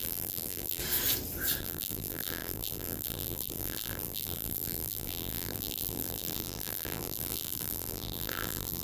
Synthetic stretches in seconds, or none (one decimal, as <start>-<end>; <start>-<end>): 0.0-0.8; 1.6-8.8